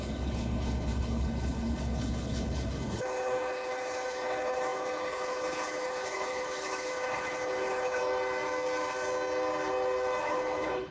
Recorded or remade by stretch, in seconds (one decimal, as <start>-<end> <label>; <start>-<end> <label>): 0.0-8.0 remade; 8.0-10.2 recorded; 10.2-10.9 remade